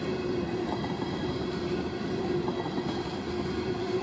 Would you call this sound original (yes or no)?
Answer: yes